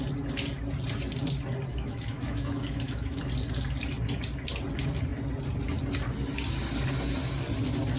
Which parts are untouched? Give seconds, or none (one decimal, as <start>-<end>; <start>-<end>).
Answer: 0.0-1.7; 3.2-8.0